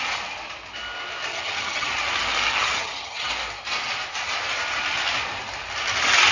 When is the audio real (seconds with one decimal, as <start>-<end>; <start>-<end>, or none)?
0.0-1.3; 1.9-2.5; 3.3-6.3